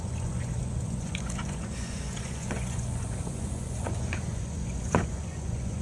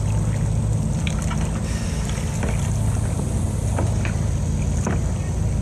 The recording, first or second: second